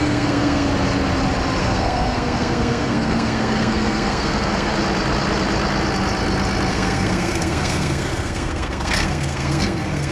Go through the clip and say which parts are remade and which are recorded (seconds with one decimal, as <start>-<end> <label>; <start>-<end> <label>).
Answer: 0.0-0.7 remade; 0.7-1.6 recorded; 1.6-4.7 remade; 4.7-6.7 recorded; 6.7-10.1 remade